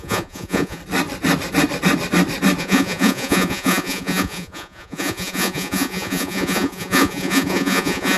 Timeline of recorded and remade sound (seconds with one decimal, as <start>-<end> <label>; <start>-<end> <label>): 0.0-0.8 remade; 0.8-2.6 recorded; 2.6-8.2 remade